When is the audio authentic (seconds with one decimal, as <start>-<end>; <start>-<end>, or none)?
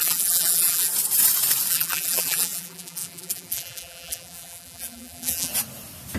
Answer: 0.9-1.7; 5.5-6.2